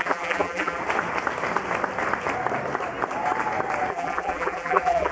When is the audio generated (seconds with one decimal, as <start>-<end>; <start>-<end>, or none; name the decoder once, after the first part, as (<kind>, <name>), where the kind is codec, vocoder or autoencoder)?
0.0-0.8 (vocoder, BigVGAN v2); 3.9-5.1